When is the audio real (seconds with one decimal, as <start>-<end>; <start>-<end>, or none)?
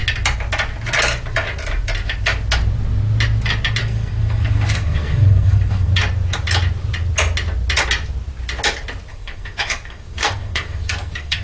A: 0.0-3.8; 5.9-9.1